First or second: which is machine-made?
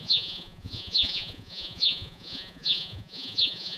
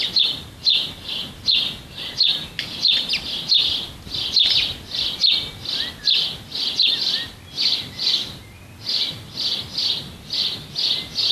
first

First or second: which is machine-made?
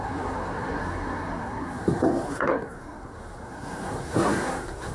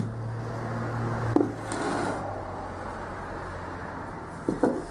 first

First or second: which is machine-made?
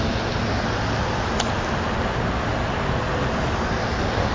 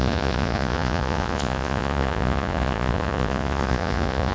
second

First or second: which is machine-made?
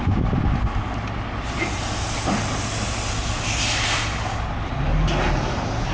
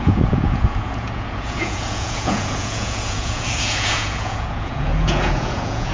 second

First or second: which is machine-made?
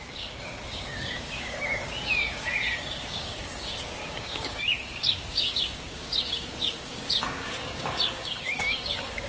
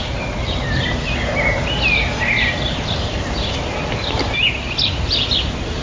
first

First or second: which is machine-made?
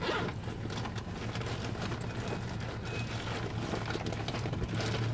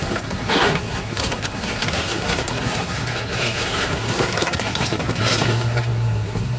second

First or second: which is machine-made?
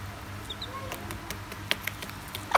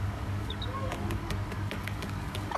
second